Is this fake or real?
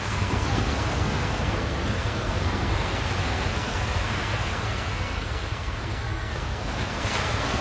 fake